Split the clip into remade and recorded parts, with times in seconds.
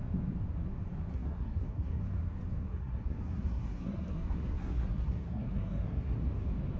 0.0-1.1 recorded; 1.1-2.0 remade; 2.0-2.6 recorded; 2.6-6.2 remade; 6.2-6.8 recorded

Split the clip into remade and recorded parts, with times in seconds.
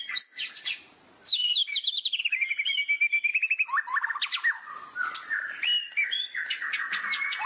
0.0-7.5 recorded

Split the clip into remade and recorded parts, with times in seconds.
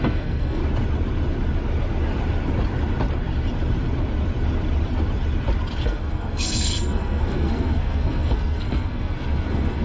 0.0-0.6 remade; 0.6-5.8 recorded; 5.8-9.8 remade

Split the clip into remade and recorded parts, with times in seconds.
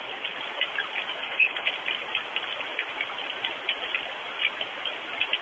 0.0-1.2 recorded; 1.2-1.7 remade; 1.7-5.4 recorded